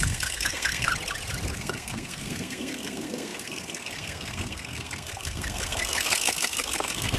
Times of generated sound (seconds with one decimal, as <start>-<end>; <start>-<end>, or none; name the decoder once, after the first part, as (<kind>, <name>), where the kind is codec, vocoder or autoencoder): 0.0-0.9 (codec, SNAC); 1.5-7.2